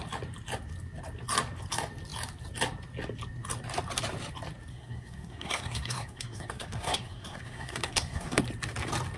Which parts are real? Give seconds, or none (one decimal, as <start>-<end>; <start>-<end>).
0.0-4.7; 8.4-9.2